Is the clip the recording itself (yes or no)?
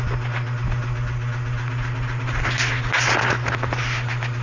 yes